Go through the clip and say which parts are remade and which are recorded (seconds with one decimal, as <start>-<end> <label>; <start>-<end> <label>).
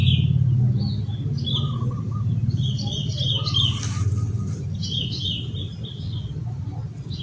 0.0-7.2 recorded